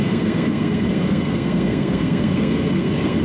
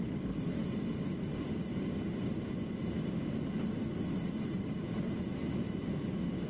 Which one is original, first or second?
second